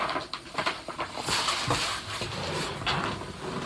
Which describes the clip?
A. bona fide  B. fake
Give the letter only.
A